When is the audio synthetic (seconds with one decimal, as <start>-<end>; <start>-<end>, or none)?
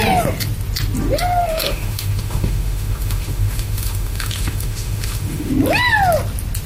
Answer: 1.5-5.5